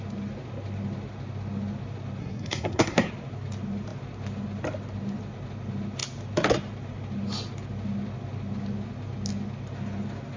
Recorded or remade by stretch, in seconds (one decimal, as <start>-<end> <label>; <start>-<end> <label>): 0.0-2.2 recorded; 2.2-3.1 remade; 3.1-10.4 recorded